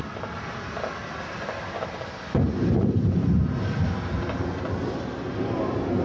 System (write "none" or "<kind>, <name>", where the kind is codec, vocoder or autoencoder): none